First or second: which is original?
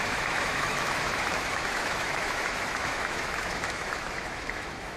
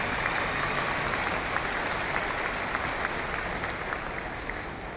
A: second